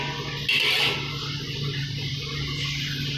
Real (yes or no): yes